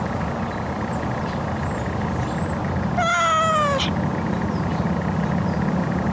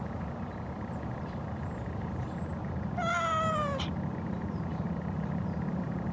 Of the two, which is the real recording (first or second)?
first